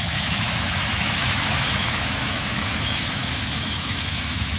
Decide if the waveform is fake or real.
fake